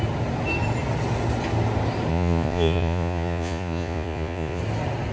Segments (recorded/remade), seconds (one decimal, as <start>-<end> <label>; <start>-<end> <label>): 0.0-2.1 recorded; 2.1-4.6 remade; 4.6-5.1 recorded

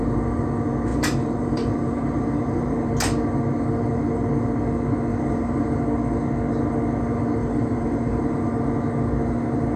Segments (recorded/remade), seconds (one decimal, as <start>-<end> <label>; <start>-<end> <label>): 0.0-0.9 recorded; 0.9-2.9 remade; 2.9-5.1 recorded; 5.1-5.8 remade; 5.8-7.4 recorded; 7.4-8.5 remade; 8.5-9.8 recorded

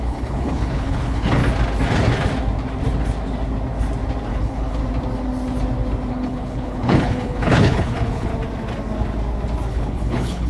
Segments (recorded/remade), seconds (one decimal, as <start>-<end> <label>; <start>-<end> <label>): 0.0-1.4 remade; 1.4-4.3 recorded; 4.3-4.8 remade; 4.8-6.1 recorded; 6.1-8.3 remade; 8.3-9.7 recorded; 9.7-10.5 remade